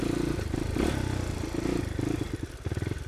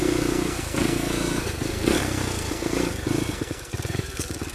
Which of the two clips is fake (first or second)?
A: second